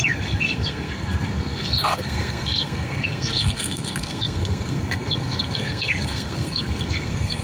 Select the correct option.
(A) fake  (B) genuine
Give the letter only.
A